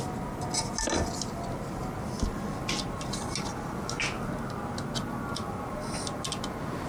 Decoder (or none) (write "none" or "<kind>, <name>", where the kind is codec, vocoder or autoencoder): none